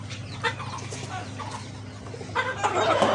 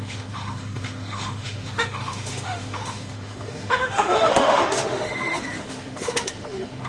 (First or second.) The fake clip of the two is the second